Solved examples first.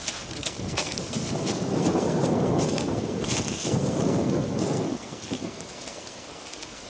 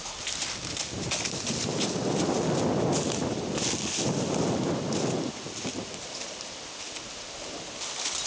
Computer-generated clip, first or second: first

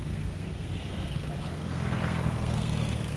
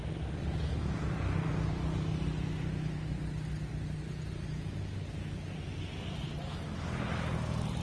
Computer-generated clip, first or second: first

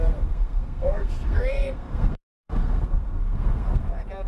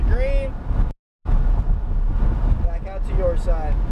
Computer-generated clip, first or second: first